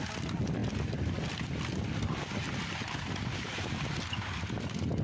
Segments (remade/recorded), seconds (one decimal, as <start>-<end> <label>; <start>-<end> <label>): 0.0-0.6 recorded; 0.6-3.0 remade; 3.0-5.0 recorded